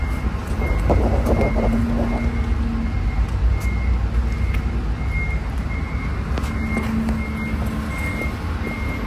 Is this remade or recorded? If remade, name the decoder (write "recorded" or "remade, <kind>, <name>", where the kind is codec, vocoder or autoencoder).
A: recorded